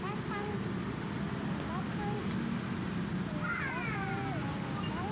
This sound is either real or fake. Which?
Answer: real